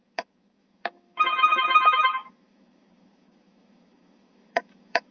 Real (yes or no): no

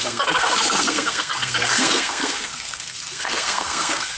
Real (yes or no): no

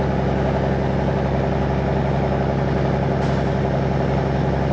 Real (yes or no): yes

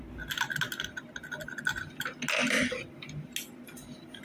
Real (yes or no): yes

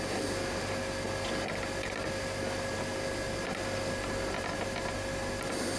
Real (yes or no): yes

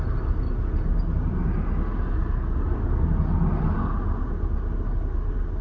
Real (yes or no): yes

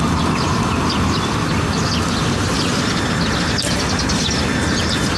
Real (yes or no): yes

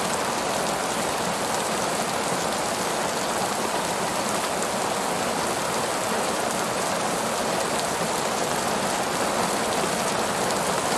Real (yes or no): yes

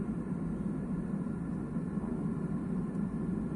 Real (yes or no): yes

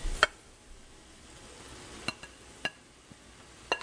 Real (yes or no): yes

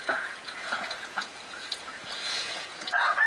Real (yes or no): no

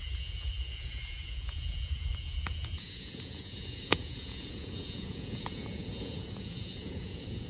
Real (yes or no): no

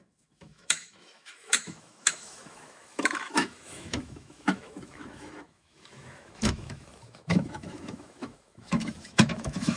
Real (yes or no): no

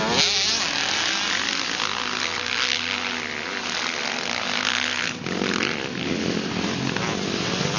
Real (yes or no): yes